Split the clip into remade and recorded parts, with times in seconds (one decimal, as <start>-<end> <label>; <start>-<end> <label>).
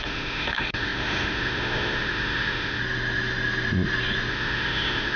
0.0-2.8 remade; 2.8-4.3 recorded; 4.3-5.2 remade